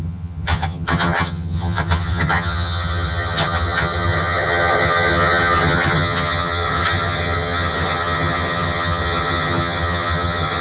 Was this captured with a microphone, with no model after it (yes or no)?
no